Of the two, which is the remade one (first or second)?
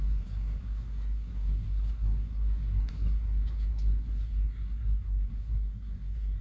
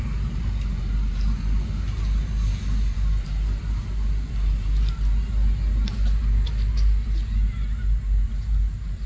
first